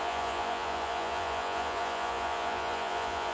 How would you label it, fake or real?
fake